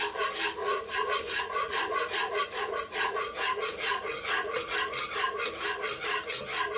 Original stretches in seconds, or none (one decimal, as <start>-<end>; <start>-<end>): 0.0-0.6; 4.7-6.8